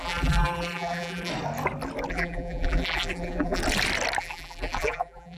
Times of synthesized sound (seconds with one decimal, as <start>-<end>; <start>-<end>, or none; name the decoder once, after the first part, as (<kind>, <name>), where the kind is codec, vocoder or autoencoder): 0.0-1.3 (vocoder, BigVGAN v2); 2.1-3.6; 4.2-5.4